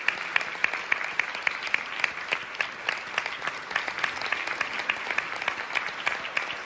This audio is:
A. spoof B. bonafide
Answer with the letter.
B